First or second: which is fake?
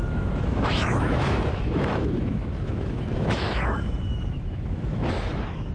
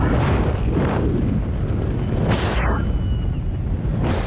first